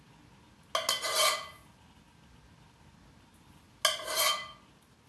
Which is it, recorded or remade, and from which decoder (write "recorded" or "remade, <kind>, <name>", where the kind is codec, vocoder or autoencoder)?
recorded